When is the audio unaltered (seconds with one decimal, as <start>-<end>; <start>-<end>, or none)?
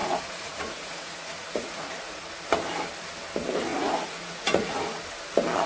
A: 2.3-3.7; 4.8-5.7